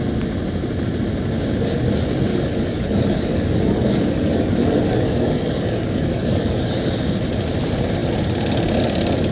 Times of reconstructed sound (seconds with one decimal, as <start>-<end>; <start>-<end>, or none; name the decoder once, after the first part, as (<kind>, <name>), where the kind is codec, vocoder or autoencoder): 2.3-6.8 (codec, DAC)